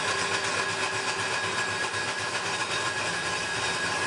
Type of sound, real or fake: real